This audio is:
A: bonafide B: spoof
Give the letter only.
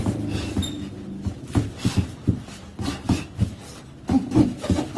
A